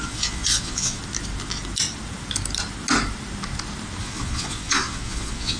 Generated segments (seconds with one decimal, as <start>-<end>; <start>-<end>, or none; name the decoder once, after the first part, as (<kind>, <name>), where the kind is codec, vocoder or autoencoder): 0.0-1.0 (vocoder, Vocos); 4.0-5.6